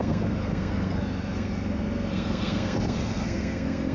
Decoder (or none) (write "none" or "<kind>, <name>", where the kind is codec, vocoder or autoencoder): codec, SNAC